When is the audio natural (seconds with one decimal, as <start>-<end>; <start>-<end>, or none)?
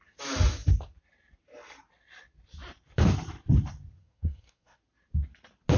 0.0-4.0; 4.8-5.8